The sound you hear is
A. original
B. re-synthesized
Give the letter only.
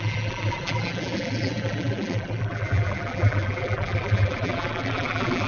B